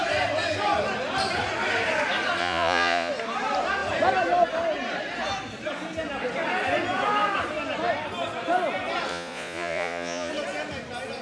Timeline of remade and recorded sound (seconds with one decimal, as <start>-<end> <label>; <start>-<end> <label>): 0.0-2.4 recorded; 2.4-3.1 remade; 3.1-9.1 recorded; 9.1-10.3 remade; 10.3-11.2 recorded